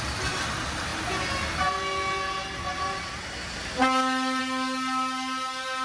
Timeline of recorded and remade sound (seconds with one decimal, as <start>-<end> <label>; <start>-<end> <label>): 0.0-5.8 recorded